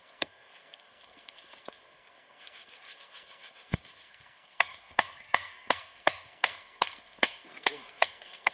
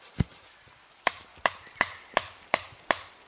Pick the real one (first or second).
second